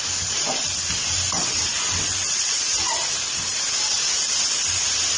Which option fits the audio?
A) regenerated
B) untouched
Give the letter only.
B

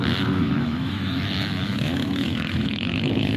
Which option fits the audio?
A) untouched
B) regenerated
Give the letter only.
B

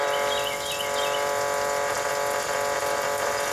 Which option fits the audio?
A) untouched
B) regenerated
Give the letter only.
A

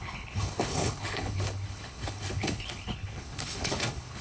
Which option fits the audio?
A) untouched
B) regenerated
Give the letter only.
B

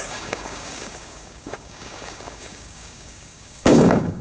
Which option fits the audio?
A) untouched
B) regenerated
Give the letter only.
B